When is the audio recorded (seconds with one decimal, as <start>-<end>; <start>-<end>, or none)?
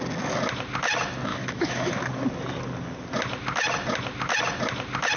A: 0.0-1.3; 1.9-5.2